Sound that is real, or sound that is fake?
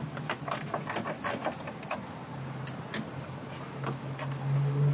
real